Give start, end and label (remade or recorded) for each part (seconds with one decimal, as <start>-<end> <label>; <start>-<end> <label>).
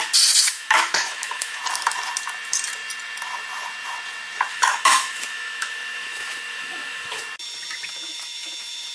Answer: 0.0-0.4 recorded; 0.4-1.6 remade; 1.6-4.5 recorded; 4.5-7.2 remade; 7.2-8.9 recorded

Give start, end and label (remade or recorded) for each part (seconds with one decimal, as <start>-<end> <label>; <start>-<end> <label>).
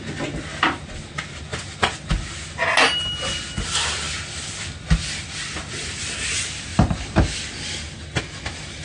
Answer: 0.0-6.7 recorded; 6.7-8.2 remade; 8.2-8.8 recorded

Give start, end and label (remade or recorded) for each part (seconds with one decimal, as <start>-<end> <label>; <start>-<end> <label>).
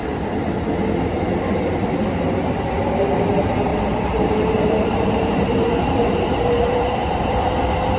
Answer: 0.0-3.7 recorded; 3.7-7.3 remade; 7.3-8.0 recorded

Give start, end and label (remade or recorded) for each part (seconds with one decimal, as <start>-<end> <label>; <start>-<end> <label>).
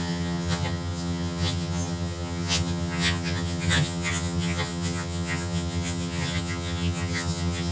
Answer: 0.0-7.7 remade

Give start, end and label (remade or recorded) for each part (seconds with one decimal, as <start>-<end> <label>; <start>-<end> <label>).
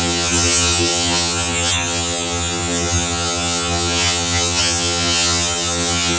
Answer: 0.0-6.2 remade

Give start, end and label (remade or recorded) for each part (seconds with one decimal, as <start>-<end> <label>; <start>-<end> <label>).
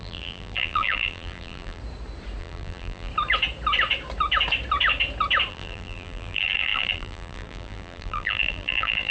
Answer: 0.0-1.8 remade; 1.8-2.4 recorded; 2.4-3.1 remade; 3.1-5.5 recorded; 5.5-9.1 remade